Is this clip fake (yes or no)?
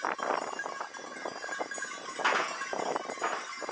no